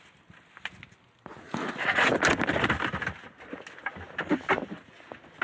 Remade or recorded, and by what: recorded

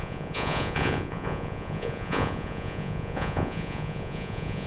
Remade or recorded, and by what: remade, vocoder, Vocos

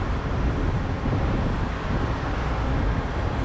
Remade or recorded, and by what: recorded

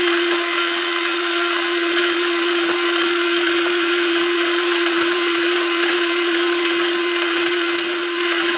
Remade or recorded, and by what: remade, vocoder, Vocos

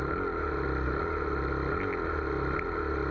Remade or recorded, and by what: recorded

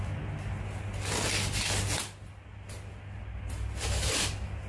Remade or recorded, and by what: recorded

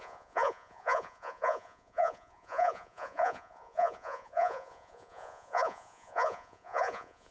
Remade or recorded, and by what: remade, vocoder, Vocos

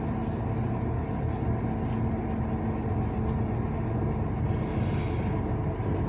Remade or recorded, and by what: recorded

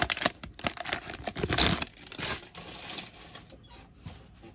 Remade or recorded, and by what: recorded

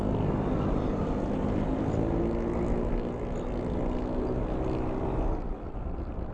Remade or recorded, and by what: recorded